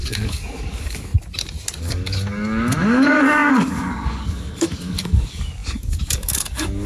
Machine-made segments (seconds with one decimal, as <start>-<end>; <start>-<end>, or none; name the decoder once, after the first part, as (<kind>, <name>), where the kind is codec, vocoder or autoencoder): 0.0-1.1 (codec, DAC); 1.8-6.9